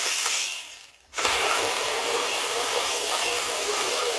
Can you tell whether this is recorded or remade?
remade